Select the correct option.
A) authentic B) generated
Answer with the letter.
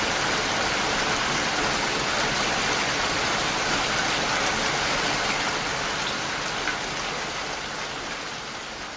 A